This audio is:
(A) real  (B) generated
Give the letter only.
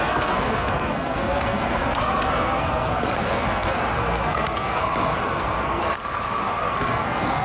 B